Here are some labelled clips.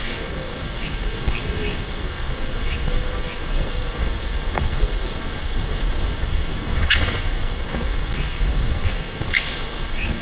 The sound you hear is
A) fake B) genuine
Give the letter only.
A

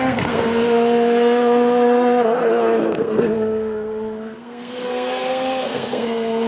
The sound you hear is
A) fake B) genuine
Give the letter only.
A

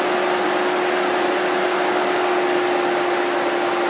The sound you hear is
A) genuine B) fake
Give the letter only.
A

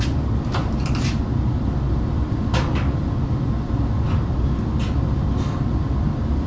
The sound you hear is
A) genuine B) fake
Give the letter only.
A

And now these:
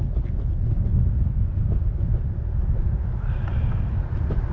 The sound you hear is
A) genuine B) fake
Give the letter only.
A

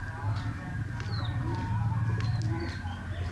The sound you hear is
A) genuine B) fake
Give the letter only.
A